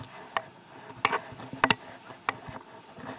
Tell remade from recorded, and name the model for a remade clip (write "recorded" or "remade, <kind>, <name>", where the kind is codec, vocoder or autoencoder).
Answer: recorded